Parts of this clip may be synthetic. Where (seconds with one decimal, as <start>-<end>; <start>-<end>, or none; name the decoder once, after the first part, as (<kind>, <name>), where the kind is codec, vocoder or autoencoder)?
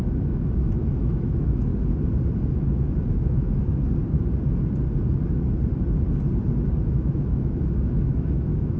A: 0.0-1.7 (autoencoder, DAC-VAE); 2.5-3.7; 6.8-8.8